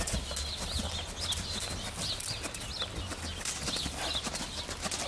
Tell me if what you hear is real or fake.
real